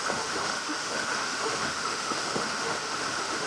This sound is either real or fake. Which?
fake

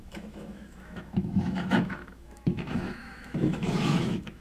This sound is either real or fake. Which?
fake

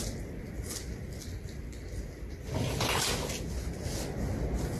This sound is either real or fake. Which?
real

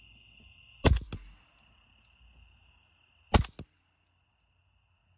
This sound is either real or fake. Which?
real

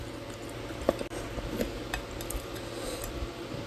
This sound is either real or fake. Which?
real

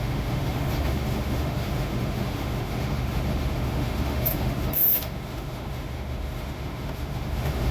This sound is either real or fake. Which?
fake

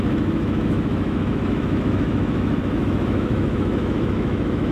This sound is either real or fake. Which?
fake